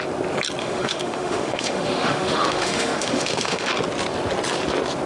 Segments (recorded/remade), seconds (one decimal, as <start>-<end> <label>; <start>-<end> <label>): 0.0-0.6 recorded; 0.6-3.7 remade; 3.7-5.1 recorded